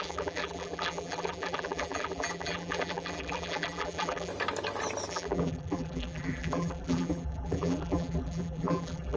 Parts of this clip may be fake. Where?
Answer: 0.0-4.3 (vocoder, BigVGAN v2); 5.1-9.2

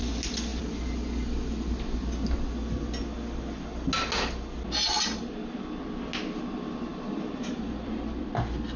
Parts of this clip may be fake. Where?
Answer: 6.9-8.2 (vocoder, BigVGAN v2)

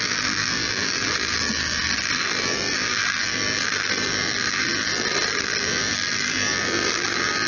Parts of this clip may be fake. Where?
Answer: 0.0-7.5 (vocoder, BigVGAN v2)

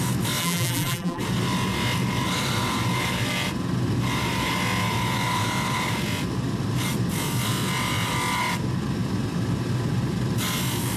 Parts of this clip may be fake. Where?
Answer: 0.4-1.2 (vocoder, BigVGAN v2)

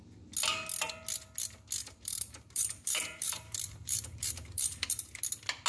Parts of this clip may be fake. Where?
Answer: 1.8-5.2 (vocoder, BigVGAN v2)

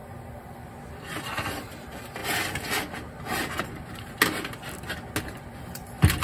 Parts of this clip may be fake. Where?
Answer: 0.9-2.2 (vocoder, BigVGAN v2); 5.2-6.2